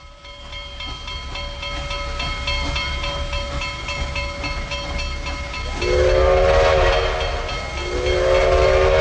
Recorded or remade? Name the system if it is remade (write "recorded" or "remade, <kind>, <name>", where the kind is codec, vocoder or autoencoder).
recorded